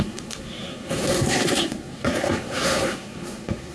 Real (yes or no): no